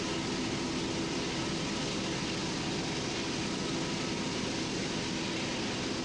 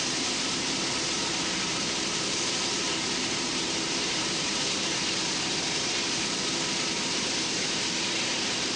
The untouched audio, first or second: first